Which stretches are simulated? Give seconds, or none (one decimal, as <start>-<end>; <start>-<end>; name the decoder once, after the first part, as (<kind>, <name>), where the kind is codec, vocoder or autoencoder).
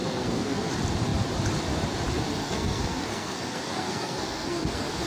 0.0-0.7 (codec, SNAC); 2.4-5.1